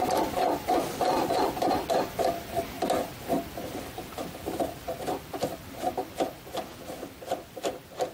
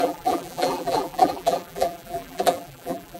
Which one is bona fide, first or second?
first